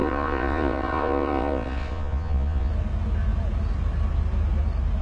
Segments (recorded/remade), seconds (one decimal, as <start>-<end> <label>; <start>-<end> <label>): 0.0-2.7 remade; 2.7-5.0 recorded